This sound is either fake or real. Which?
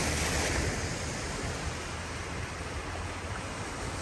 real